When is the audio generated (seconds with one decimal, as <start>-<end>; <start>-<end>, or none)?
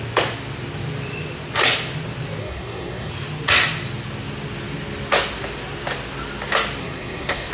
2.4-3.1; 6.8-7.5